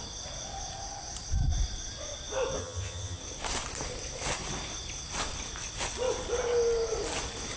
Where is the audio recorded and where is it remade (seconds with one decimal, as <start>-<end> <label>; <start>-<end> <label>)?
0.0-2.6 recorded; 2.6-3.2 remade; 3.2-7.6 recorded